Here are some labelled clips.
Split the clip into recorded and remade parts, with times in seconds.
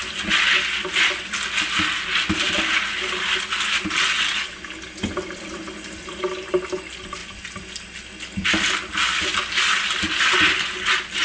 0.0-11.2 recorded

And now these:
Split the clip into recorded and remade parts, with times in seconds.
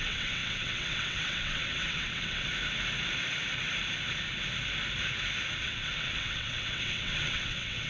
0.0-2.5 remade; 2.5-5.6 recorded; 5.6-7.9 remade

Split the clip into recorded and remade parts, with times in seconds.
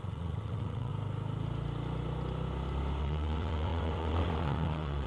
0.0-0.9 remade; 0.9-3.0 recorded; 3.0-5.1 remade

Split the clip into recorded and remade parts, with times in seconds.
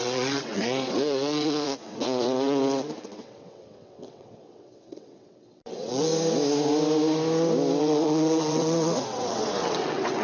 0.0-6.1 remade; 6.1-7.8 recorded; 7.8-10.2 remade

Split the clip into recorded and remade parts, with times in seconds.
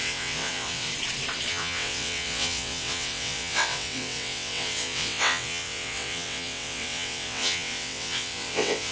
0.0-0.9 remade; 0.9-1.5 recorded; 1.5-8.9 remade